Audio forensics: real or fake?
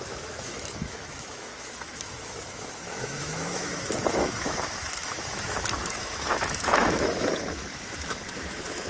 fake